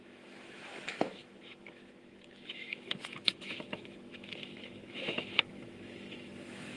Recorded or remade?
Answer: remade